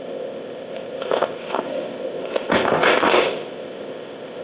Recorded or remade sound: remade